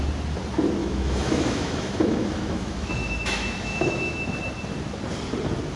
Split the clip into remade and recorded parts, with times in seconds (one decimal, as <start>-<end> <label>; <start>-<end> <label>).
0.0-0.8 recorded; 0.8-4.3 remade; 4.3-5.8 recorded